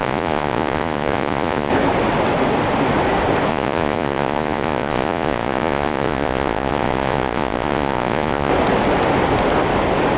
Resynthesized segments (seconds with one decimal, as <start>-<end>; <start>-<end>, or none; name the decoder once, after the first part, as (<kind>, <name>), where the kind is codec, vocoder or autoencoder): 0.0-1.7 (vocoder, Vocos); 3.5-8.5